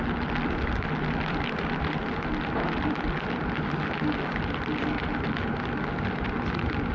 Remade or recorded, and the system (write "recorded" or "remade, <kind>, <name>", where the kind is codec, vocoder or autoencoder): recorded